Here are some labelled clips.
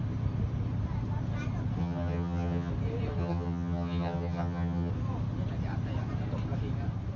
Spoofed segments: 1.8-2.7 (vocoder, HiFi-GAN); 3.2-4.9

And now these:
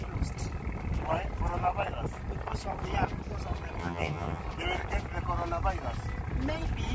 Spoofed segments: 3.8-4.4 (vocoder, HiFi-GAN)

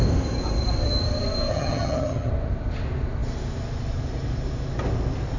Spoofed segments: 1.5-2.3 (vocoder, HiFi-GAN)

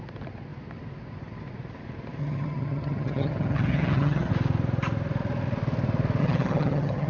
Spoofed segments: 2.2-4.3 (vocoder, HiFi-GAN); 6.2-7.1

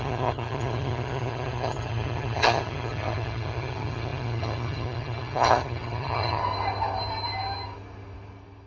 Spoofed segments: 0.0-6.4 (vocoder, HiFi-GAN)